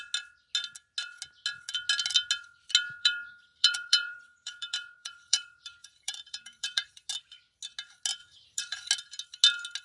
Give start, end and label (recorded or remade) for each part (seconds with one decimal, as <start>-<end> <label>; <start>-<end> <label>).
0.0-3.0 recorded; 3.0-7.1 remade; 7.1-8.2 recorded; 8.2-8.9 remade; 8.9-9.8 recorded